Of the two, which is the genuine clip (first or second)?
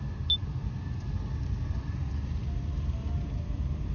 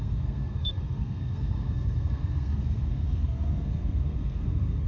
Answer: first